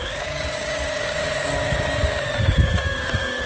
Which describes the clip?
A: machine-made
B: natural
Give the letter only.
A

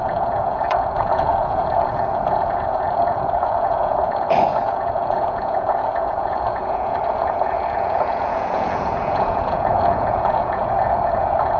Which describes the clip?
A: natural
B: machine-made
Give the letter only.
B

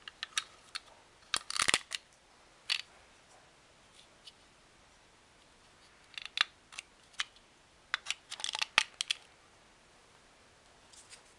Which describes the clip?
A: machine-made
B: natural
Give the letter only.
B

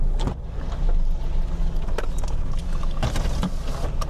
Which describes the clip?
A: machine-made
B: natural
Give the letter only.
B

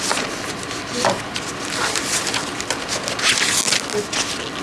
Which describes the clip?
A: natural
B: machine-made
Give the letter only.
A